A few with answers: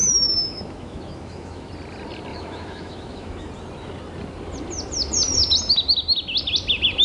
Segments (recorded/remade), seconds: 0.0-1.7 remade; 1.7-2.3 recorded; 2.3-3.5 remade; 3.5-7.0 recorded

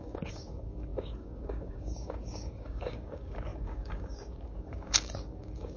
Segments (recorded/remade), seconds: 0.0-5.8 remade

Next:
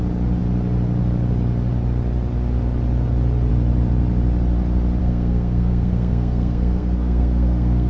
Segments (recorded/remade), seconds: 0.0-5.0 recorded; 5.0-7.9 remade

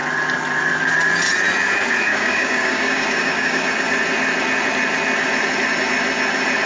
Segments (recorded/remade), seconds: 0.0-2.1 recorded; 2.1-3.7 remade; 3.7-6.7 recorded

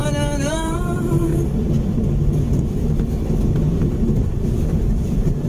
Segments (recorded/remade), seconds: 0.0-0.6 recorded; 0.6-1.3 remade; 1.3-4.6 recorded; 4.6-5.5 remade

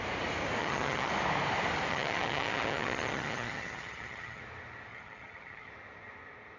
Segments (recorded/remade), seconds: 0.0-0.6 recorded; 0.6-1.1 remade; 1.1-1.9 recorded; 1.9-4.4 remade; 4.4-4.9 recorded; 4.9-5.7 remade; 5.7-6.6 recorded

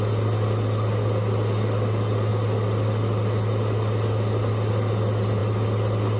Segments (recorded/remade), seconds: 0.0-6.2 recorded

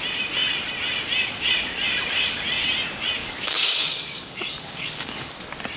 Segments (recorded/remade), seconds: 0.0-3.2 recorded; 3.2-5.3 remade; 5.3-5.8 recorded